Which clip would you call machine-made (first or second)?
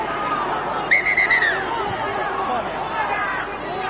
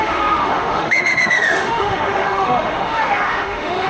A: second